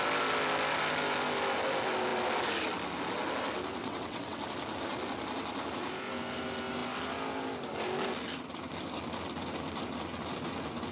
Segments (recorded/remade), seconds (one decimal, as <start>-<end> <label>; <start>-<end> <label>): 0.0-3.8 recorded; 3.8-4.4 remade; 4.4-10.9 recorded